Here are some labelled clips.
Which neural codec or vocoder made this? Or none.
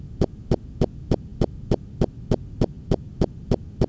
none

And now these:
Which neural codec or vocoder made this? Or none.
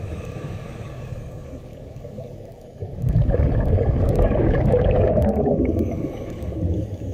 codec, DAC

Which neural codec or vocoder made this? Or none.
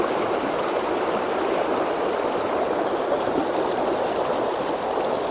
none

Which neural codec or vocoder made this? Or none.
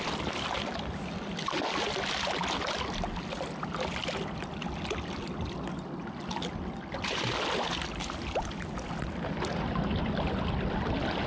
none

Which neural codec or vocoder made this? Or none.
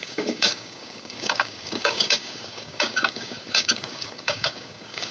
codec, DAC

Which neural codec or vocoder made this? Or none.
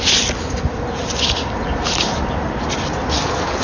none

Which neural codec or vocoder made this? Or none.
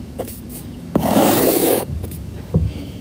codec, DAC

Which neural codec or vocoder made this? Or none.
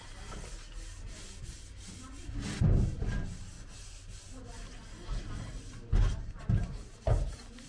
none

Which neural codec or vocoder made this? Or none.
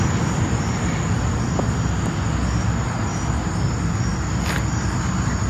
none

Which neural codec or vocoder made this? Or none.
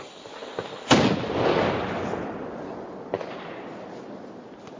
none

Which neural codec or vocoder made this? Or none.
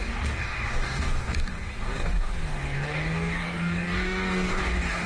codec, DAC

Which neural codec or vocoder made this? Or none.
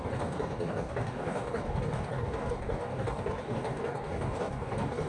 codec, DAC